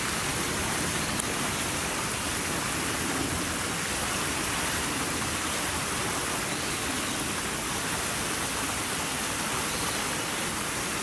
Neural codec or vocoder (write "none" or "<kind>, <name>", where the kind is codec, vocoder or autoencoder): none